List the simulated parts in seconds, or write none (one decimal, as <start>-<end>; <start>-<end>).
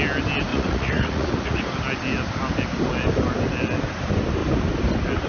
0.5-1.6